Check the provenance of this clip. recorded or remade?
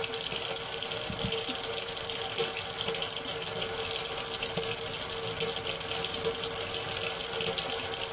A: recorded